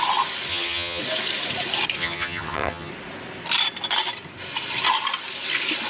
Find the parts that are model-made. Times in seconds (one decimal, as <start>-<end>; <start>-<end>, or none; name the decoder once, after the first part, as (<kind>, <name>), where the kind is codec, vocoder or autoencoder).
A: 0.5-1.0 (vocoder, HiFi-GAN); 2.0-2.9